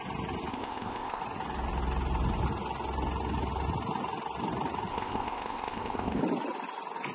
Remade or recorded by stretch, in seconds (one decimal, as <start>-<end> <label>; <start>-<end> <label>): 0.0-0.5 recorded; 0.5-1.2 remade; 1.2-4.9 recorded; 4.9-6.2 remade; 6.2-7.1 recorded